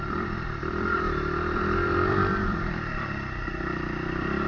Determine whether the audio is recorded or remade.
remade